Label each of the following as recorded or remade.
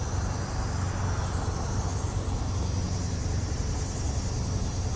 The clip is recorded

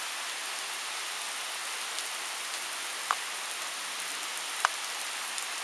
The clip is recorded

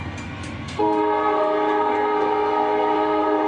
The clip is remade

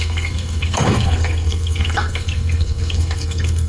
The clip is remade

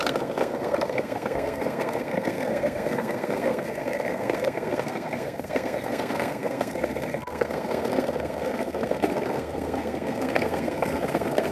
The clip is remade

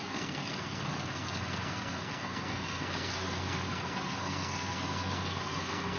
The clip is remade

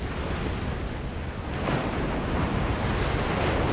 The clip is recorded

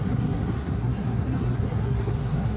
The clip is remade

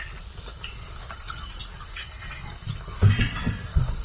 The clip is recorded